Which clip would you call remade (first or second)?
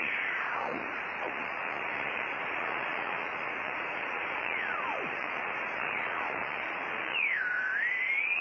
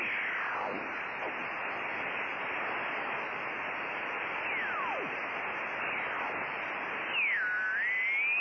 first